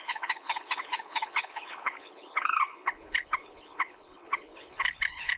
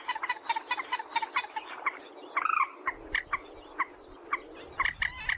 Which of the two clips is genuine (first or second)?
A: second